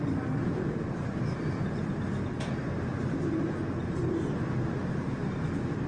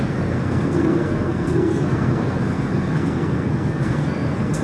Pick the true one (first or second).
first